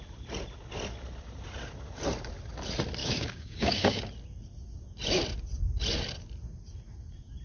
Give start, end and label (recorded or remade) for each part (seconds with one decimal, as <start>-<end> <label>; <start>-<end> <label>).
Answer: 0.0-3.0 recorded; 3.0-4.0 remade; 4.0-7.4 recorded